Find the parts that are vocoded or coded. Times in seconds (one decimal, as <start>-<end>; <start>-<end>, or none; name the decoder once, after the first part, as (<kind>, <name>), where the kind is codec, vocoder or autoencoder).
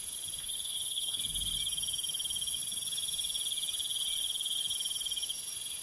0.4-1.2 (codec, HILCodec)